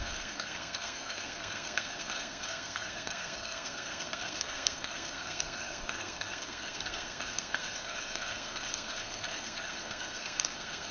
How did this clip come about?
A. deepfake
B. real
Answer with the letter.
A